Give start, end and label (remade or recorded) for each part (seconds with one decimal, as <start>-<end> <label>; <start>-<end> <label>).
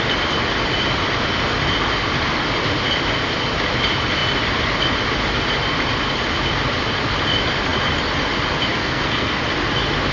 0.0-8.8 recorded; 8.8-9.4 remade; 9.4-10.1 recorded